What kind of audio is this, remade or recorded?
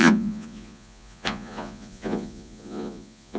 remade